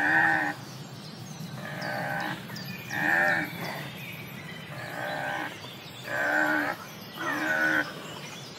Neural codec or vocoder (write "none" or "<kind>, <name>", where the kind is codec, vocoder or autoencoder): vocoder, BigVGAN v2